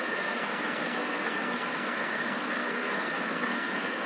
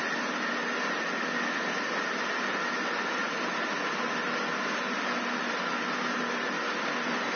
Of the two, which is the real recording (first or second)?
second